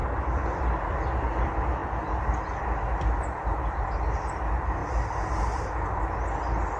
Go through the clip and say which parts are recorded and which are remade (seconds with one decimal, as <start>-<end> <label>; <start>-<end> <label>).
0.0-6.8 recorded